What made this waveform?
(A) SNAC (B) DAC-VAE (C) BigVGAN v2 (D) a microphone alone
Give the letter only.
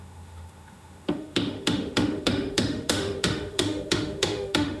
B